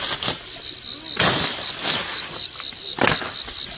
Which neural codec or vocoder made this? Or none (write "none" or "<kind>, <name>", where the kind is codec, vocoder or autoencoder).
none